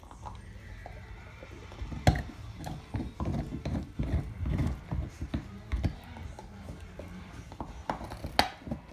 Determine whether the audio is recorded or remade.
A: recorded